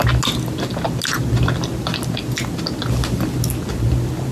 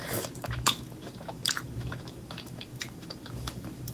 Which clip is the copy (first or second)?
second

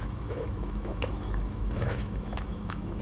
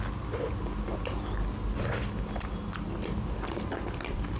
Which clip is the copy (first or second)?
first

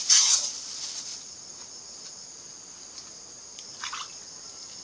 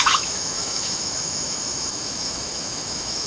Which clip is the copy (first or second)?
second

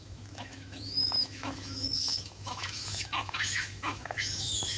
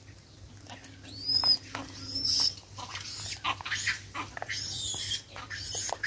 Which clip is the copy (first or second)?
first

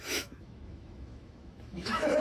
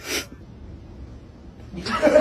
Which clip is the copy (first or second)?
first